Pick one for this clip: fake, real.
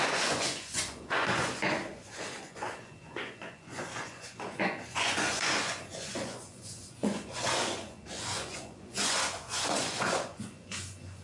fake